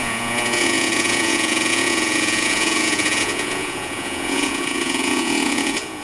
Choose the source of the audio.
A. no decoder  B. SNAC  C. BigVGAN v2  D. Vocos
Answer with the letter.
D